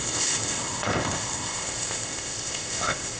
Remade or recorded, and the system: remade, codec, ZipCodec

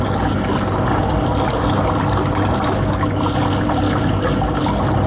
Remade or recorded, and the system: recorded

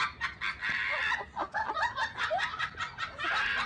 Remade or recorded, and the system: recorded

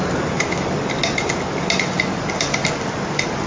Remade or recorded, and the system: recorded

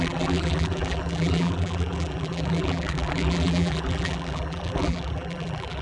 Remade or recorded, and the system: remade, vocoder, BigVGAN v2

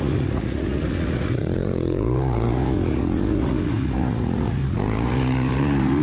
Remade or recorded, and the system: remade, vocoder, Vocos